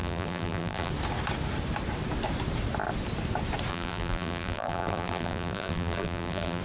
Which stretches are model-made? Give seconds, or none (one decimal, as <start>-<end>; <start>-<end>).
0.0-0.9; 3.7-6.6